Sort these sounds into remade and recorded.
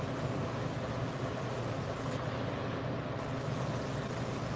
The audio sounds recorded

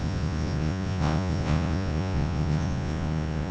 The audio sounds remade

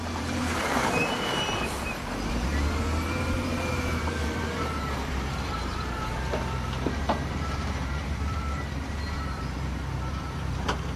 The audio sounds remade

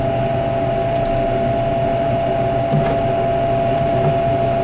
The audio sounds recorded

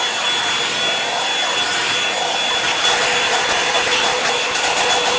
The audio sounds recorded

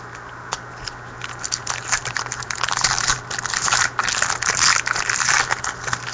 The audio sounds recorded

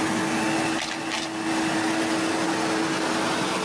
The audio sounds recorded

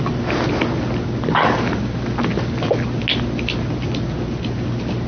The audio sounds recorded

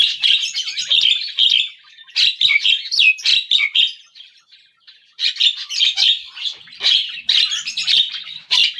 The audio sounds remade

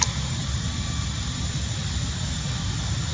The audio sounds recorded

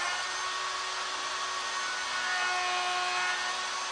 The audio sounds recorded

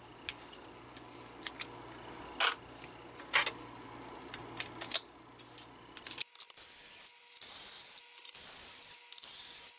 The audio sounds recorded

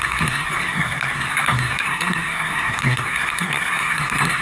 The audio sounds remade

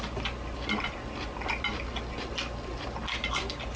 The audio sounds recorded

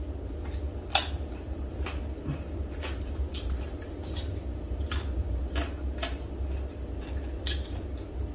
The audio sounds recorded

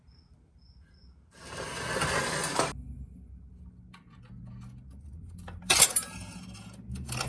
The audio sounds recorded